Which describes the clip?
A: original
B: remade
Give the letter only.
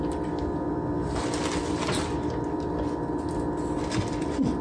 A